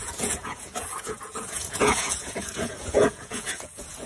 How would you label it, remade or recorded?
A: remade